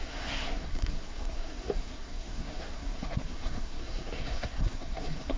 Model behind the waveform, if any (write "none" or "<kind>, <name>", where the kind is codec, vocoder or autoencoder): codec, SNAC